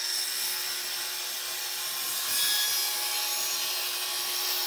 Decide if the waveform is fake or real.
real